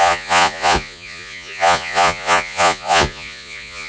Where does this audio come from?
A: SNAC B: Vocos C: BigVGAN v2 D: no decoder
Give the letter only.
B